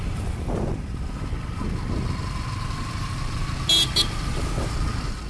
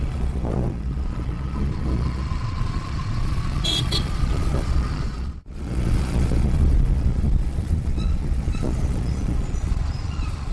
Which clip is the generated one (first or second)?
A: second